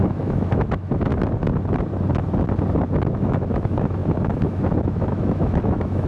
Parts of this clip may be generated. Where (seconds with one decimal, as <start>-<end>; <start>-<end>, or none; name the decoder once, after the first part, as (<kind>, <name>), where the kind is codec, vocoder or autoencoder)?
0.0-1.1 (autoencoder, DAC-VAE); 3.2-6.1